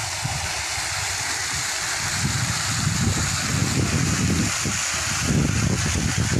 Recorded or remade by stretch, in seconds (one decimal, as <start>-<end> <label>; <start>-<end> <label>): 0.0-6.4 recorded